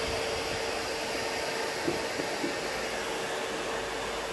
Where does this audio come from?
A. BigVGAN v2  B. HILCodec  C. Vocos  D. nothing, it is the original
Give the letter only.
D